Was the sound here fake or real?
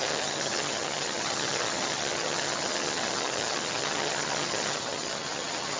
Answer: fake